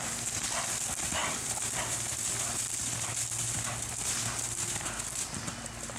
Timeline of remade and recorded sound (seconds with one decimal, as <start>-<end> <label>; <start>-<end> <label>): 0.0-6.0 recorded